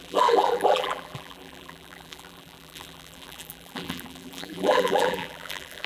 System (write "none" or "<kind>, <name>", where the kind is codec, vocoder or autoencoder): vocoder, BigVGAN v2